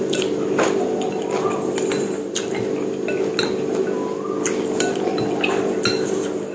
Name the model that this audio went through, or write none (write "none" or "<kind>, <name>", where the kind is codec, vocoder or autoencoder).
none